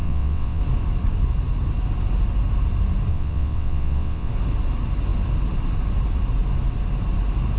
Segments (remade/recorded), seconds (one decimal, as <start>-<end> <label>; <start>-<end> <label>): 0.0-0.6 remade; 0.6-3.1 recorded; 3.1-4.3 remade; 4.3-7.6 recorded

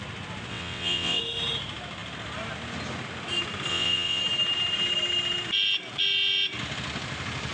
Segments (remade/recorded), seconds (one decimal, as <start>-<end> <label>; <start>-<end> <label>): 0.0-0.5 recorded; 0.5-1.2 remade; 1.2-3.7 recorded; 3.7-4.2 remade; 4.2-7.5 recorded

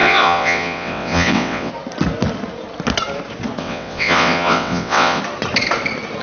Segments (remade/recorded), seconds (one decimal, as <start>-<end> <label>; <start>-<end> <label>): 0.0-1.7 remade; 1.7-3.6 recorded; 3.6-5.2 remade; 5.2-6.2 recorded

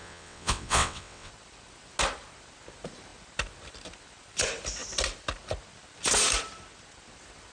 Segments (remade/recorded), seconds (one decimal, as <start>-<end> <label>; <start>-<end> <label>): 0.0-1.3 remade; 1.3-7.5 recorded

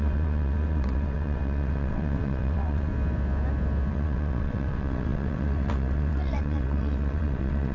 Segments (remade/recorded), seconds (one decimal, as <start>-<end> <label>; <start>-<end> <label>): 0.0-2.9 remade; 2.9-3.9 recorded; 3.9-7.7 remade